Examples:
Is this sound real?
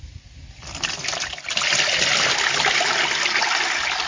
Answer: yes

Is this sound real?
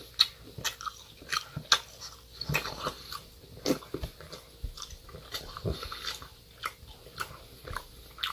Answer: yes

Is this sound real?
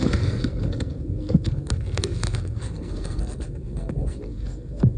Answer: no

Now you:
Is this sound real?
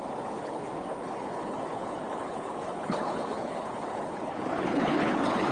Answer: no